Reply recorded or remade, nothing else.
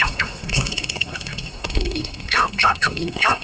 remade